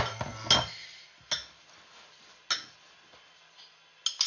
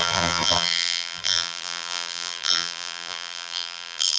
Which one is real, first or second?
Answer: first